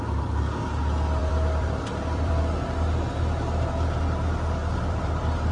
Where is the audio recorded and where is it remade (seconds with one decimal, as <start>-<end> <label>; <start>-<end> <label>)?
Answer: 0.0-1.2 recorded; 1.2-2.4 remade; 2.4-4.6 recorded; 4.6-5.5 remade